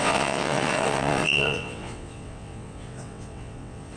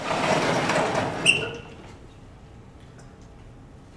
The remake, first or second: first